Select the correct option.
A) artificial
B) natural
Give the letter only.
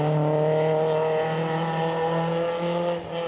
B